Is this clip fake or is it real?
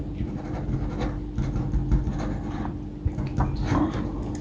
real